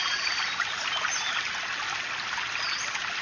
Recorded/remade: recorded